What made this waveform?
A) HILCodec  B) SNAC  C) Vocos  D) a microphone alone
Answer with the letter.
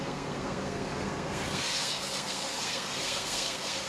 B